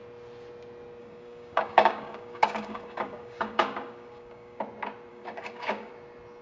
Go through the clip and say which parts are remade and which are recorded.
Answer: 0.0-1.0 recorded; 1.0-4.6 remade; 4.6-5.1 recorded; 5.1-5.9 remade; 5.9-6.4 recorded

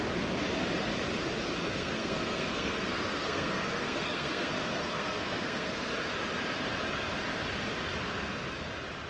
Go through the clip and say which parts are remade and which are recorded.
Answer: 0.0-1.6 recorded; 1.6-5.9 remade; 5.9-9.1 recorded

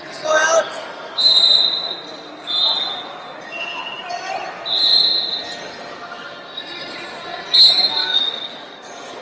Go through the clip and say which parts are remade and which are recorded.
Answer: 0.0-0.8 recorded; 0.8-1.4 remade; 1.4-8.0 recorded; 8.0-9.2 remade